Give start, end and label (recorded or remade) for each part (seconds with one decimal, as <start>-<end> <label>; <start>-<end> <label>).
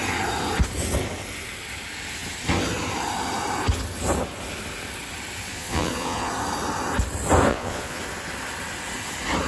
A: 0.0-5.5 recorded; 5.5-6.3 remade; 6.3-7.5 recorded; 7.5-8.0 remade; 8.0-9.5 recorded